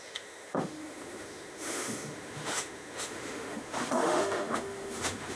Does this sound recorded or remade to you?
remade